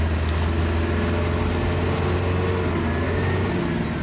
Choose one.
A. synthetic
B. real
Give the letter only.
B